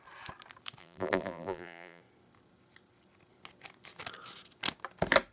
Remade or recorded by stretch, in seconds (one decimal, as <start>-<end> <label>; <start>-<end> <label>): 0.0-0.8 recorded; 0.8-2.0 remade; 2.0-5.3 recorded

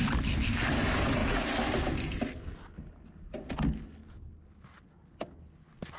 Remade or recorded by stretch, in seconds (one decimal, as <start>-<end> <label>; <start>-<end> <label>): 0.0-6.0 recorded

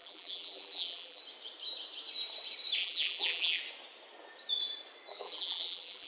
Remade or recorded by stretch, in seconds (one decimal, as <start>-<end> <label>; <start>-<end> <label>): 0.0-1.2 remade; 1.2-2.8 recorded; 2.8-3.6 remade; 3.6-5.1 recorded; 5.1-6.1 remade

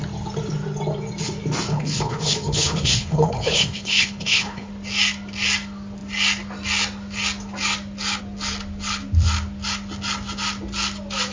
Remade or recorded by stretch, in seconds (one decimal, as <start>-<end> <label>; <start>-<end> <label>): 0.0-1.7 recorded; 1.7-4.7 remade; 4.7-11.3 recorded

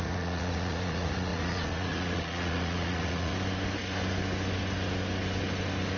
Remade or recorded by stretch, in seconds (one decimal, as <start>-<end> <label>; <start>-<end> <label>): 0.0-3.3 remade; 3.3-6.0 recorded

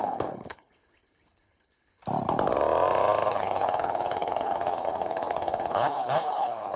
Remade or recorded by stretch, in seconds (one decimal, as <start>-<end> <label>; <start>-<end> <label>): 0.0-2.0 remade; 2.0-3.3 recorded; 3.3-6.8 remade